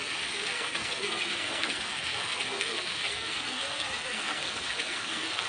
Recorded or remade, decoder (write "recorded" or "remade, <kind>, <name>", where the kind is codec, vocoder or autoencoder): remade, codec, SNAC